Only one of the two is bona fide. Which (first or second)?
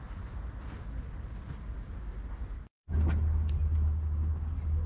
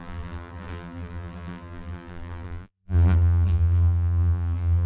first